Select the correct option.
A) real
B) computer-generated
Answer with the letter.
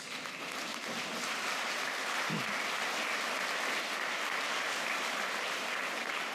A